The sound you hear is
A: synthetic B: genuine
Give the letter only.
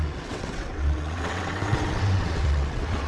A